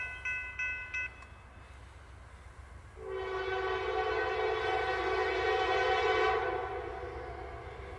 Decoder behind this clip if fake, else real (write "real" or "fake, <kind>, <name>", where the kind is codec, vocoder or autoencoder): real